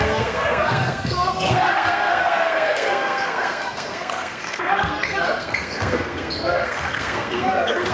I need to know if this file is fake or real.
fake